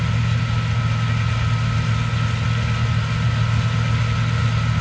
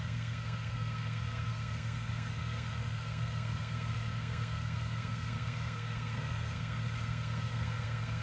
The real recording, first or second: first